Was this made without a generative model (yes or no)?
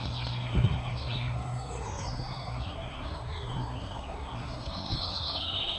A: no